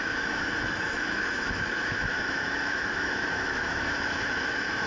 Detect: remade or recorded remade